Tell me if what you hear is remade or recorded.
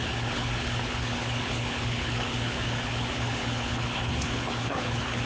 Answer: remade